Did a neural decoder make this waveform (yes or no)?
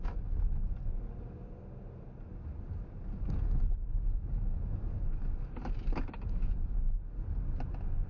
no